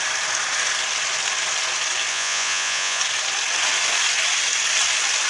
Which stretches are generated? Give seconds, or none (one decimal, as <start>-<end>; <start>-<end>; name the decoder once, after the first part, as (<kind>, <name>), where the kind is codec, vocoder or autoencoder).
2.1-3.0 (vocoder, Vocos)